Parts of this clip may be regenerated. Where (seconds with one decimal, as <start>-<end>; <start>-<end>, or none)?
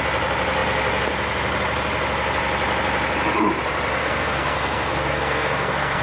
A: 4.0-6.0